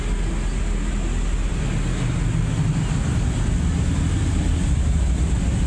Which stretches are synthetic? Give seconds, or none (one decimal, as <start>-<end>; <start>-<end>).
none